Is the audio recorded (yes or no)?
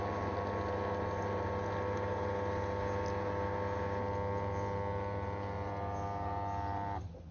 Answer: yes